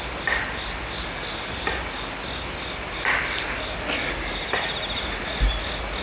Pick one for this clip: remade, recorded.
recorded